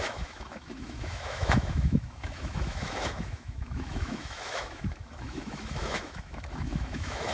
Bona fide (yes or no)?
no